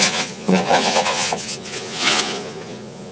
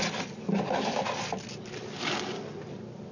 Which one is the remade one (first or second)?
first